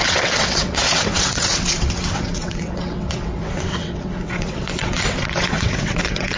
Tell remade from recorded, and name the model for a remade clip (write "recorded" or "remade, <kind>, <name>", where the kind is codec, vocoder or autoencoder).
remade, vocoder, WaveNeXt